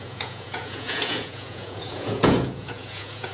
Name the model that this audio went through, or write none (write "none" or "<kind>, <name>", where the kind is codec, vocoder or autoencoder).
vocoder, Vocos